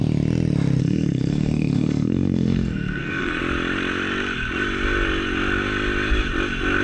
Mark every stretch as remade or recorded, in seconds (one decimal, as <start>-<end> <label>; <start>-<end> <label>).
0.0-0.8 recorded; 0.8-3.4 remade; 3.4-6.8 recorded